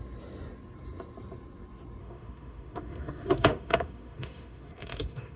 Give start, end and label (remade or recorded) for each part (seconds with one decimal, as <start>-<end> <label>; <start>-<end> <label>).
0.0-2.0 recorded; 2.0-5.4 remade